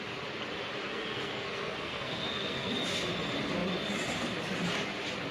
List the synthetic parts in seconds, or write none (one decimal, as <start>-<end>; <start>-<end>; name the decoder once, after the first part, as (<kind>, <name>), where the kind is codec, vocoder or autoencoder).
0.8-2.7 (codec, SNAC)